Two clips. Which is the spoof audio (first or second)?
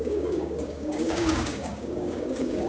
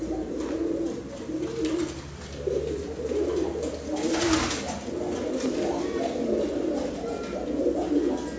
first